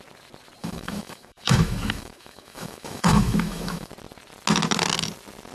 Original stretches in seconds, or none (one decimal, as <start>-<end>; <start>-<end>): 0.0-0.6; 3.9-5.5